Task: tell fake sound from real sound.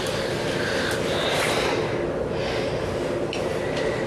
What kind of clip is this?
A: real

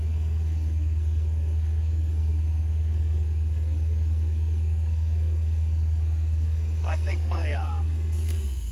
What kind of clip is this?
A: fake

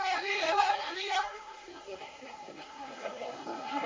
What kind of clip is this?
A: fake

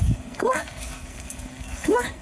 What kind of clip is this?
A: fake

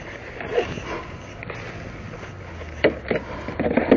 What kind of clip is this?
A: real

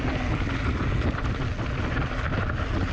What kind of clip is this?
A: real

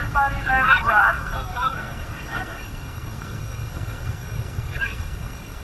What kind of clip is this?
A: fake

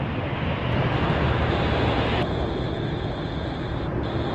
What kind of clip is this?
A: real